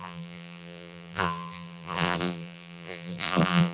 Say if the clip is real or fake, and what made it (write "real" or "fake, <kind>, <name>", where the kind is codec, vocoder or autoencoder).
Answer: fake, vocoder, BigVGAN v2